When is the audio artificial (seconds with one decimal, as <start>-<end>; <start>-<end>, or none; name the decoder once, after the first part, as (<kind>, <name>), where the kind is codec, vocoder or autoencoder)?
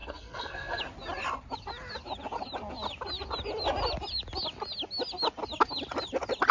0.0-0.8 (codec, SNAC)